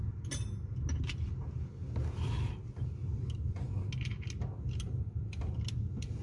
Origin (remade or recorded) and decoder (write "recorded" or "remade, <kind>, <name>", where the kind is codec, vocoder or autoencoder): recorded